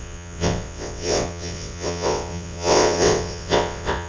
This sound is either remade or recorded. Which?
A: remade